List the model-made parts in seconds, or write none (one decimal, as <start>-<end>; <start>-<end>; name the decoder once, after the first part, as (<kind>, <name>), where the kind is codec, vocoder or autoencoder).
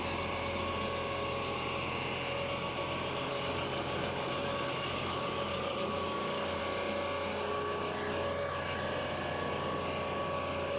3.3-6.6 (codec, DAC)